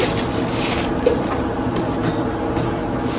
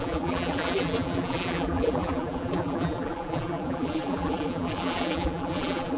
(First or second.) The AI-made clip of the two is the second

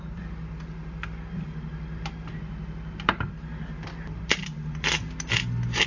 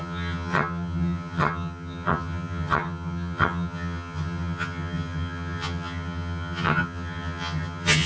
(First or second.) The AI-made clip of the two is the second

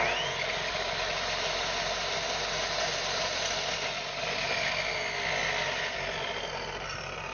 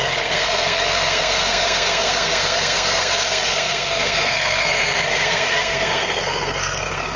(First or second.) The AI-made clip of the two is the second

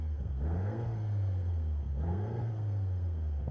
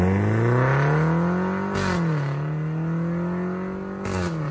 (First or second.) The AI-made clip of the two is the first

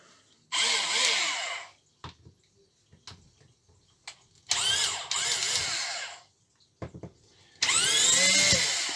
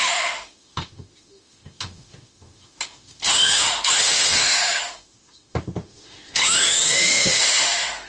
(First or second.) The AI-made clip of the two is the second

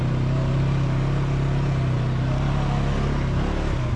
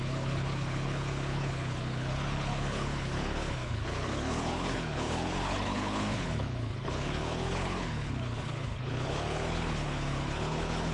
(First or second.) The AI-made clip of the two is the second